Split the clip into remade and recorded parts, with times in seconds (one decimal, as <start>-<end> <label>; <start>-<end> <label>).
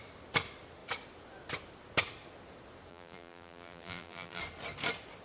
0.0-2.9 recorded; 2.9-4.4 remade; 4.4-5.2 recorded